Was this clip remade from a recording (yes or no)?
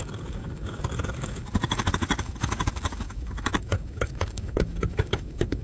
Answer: yes